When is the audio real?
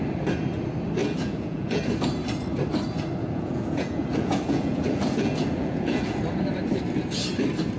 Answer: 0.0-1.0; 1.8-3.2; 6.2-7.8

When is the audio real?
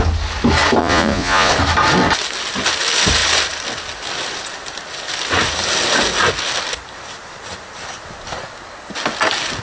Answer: 0.0-0.8; 1.5-9.6